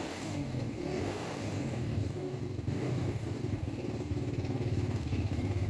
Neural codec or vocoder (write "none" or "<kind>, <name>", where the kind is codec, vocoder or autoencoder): codec, DAC